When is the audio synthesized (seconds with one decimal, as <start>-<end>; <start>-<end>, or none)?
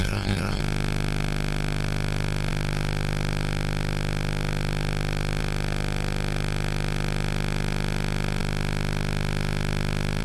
0.0-0.6